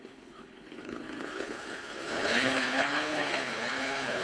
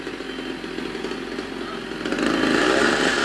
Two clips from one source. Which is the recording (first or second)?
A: second